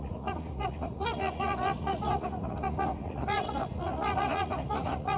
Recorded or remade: remade